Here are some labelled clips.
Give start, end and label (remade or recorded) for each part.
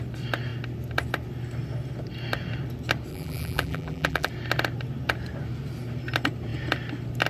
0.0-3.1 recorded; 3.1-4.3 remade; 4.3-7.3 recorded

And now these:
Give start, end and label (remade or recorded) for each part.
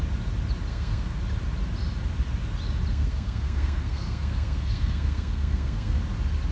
0.0-0.7 recorded; 0.7-1.2 remade; 1.2-2.9 recorded; 2.9-6.0 remade; 6.0-6.5 recorded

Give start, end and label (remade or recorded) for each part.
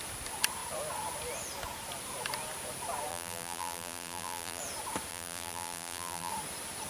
0.0-3.1 recorded; 3.1-4.6 remade; 4.6-5.1 recorded; 5.1-6.3 remade; 6.3-6.9 recorded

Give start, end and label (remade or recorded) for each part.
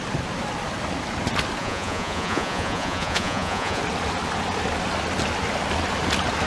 0.0-1.6 recorded; 1.6-3.8 remade; 3.8-6.5 recorded